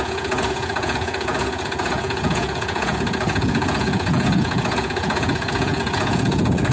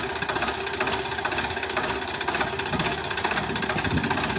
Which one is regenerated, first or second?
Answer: first